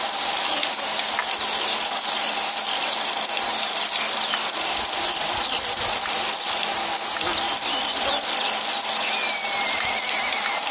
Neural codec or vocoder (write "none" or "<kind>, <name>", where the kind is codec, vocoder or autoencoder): none